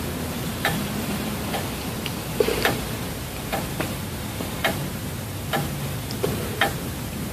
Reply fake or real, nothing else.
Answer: fake